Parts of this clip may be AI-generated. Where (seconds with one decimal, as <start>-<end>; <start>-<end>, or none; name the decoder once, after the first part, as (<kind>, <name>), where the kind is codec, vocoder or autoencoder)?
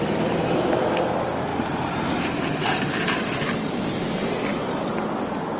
1.5-3.5 (vocoder, BigVGAN v2)